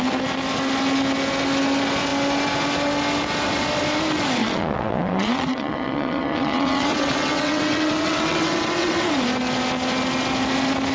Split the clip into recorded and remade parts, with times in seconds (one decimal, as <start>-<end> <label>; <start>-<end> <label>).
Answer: 0.0-4.4 recorded; 4.4-9.1 remade; 9.1-10.9 recorded